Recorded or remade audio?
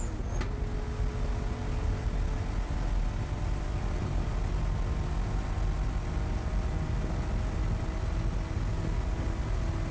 recorded